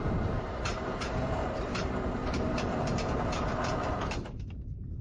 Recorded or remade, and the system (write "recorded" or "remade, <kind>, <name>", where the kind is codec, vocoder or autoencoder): remade, vocoder, BigVGAN v2